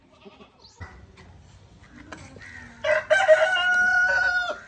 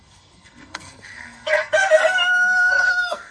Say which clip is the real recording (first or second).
first